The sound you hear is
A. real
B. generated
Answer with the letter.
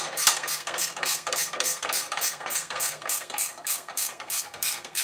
B